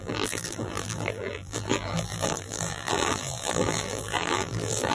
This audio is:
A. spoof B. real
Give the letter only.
A